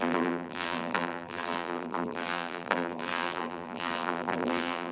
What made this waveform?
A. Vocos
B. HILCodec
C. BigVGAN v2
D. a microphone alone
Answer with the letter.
C